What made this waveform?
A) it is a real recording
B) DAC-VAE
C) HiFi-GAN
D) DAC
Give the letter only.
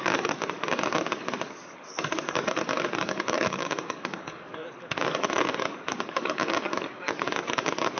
D